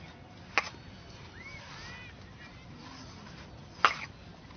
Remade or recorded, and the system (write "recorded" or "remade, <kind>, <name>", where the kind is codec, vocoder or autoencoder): recorded